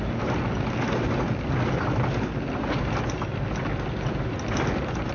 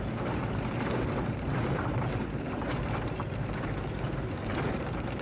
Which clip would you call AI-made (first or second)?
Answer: second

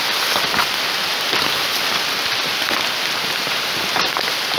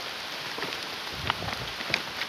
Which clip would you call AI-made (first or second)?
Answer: first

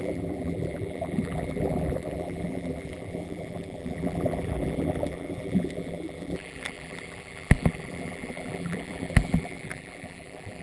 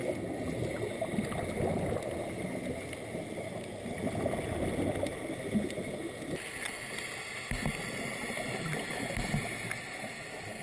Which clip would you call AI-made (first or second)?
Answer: first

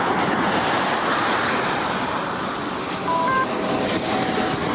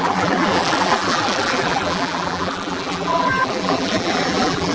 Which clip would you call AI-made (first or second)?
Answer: second